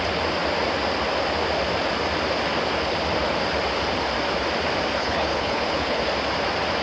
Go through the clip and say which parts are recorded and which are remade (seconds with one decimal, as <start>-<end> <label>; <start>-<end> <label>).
0.0-5.0 recorded; 5.0-6.0 remade; 6.0-6.8 recorded